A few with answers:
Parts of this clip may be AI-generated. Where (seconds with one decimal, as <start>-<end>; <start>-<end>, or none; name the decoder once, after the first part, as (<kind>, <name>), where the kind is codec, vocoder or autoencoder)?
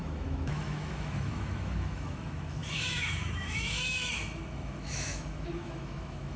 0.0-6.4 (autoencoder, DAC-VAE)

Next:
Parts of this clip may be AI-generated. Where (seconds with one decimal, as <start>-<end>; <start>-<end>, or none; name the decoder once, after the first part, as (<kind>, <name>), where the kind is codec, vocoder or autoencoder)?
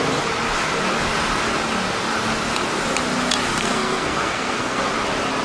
3.6-4.8 (codec, SNAC)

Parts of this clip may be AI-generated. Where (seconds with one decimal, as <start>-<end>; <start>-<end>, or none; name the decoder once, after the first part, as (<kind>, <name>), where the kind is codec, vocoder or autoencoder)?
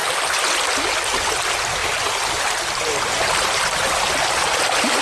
1.8-2.4 (vocoder, BigVGAN v2)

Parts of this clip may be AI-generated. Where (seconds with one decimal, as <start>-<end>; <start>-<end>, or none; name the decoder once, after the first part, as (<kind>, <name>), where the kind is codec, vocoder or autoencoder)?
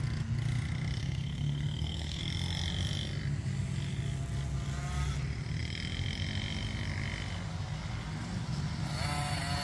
1.0-2.2 (codec, SNAC)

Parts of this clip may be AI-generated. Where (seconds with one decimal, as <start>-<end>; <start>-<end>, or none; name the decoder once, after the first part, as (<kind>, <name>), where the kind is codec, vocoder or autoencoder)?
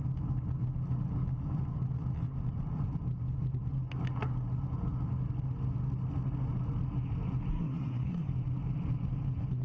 7.5-8.3 (codec, SNAC)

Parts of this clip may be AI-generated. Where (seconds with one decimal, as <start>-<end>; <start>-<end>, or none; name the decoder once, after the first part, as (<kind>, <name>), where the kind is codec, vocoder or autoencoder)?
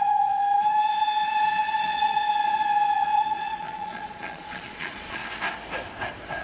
0.0-0.4 (vocoder, Vocos); 1.8-2.2; 2.9-5.2